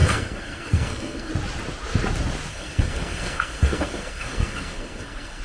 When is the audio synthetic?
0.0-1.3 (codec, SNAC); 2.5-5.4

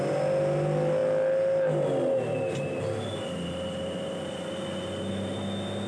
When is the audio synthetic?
none

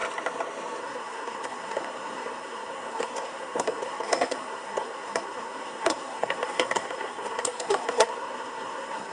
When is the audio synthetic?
0.8-9.1 (codec, SNAC)

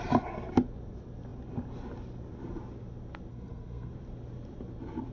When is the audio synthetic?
3.3-3.9 (codec, SNAC)

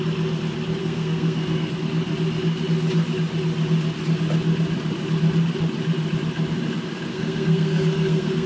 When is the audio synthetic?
0.8-1.7 (codec, SNAC); 7.1-8.5

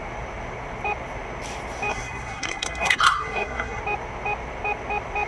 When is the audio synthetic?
1.9-3.8 (codec, SNAC)

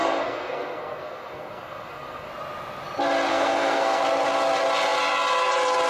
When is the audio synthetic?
0.0-2.3 (codec, SNAC); 3.3-4.0